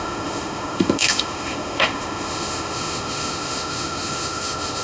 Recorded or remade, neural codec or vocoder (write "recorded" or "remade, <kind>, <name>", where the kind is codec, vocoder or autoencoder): remade, autoencoder, DAC-VAE